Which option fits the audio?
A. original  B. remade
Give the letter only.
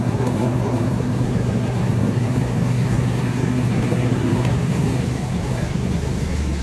B